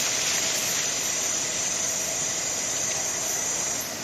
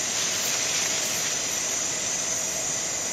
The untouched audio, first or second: second